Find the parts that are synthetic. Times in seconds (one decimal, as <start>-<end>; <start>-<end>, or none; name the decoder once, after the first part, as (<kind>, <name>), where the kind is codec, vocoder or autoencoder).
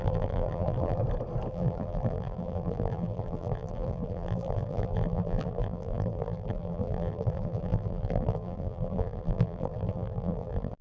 0.0-1.0 (vocoder, BigVGAN v2); 1.5-10.8